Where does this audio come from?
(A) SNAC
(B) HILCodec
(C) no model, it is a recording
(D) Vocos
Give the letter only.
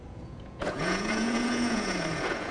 D